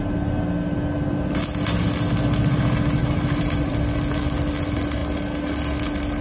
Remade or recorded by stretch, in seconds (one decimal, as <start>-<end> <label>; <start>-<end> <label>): 0.0-3.0 recorded; 3.0-3.8 remade; 3.8-6.2 recorded